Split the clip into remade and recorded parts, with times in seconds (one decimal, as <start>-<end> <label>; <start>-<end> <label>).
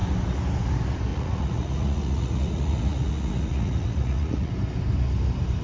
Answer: 0.0-1.1 recorded; 1.1-4.5 remade; 4.5-5.6 recorded